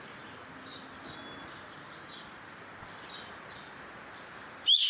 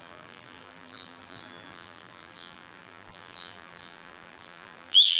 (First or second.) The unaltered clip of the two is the first